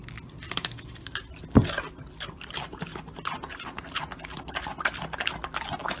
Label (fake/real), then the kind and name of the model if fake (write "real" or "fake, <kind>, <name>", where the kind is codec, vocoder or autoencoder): real